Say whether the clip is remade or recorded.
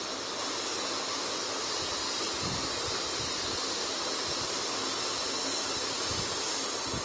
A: recorded